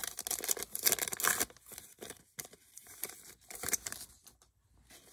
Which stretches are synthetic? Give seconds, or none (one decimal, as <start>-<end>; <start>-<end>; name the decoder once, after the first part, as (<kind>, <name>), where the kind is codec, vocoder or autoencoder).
none